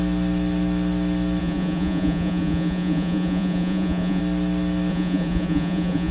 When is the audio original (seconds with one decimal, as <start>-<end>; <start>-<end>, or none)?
0.0-1.4; 4.2-4.9

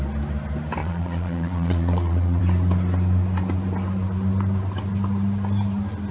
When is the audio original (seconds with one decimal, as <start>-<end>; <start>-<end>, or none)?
0.0-0.8; 2.4-6.1

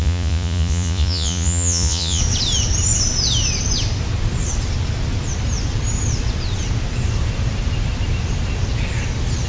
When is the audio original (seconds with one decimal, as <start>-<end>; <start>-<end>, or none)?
2.2-9.5

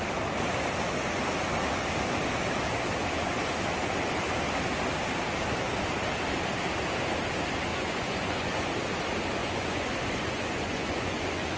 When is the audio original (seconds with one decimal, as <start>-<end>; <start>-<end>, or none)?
0.0-7.7; 8.7-9.4

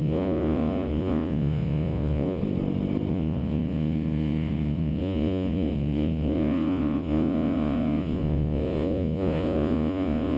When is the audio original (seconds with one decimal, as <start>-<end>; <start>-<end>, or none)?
2.4-3.1

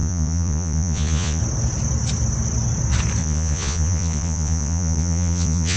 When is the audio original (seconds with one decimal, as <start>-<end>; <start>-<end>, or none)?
1.4-3.2

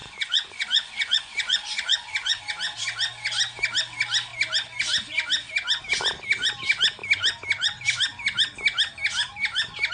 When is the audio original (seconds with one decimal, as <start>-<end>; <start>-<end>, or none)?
2.4-9.9

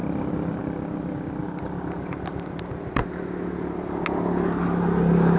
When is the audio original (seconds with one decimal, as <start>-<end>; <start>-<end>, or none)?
0.0-5.4